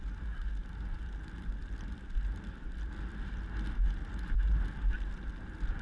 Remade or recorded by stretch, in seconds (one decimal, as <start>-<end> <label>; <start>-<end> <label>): 0.0-5.8 recorded